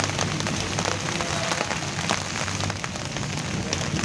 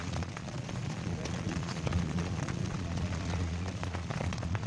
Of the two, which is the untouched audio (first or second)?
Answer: first